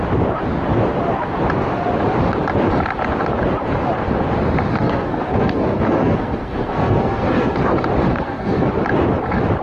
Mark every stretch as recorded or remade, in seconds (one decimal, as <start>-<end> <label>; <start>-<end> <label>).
0.0-4.7 recorded; 4.7-7.6 remade; 7.6-8.1 recorded; 8.1-8.7 remade; 8.7-9.6 recorded